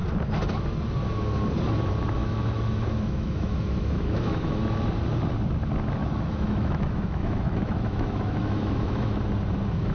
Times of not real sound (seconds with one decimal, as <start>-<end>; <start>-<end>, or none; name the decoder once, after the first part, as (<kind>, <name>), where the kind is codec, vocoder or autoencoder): 2.2-4.5 (autoencoder, DAC-VAE); 6.0-9.2